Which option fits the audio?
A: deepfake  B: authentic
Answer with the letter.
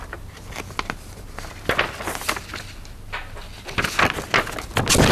B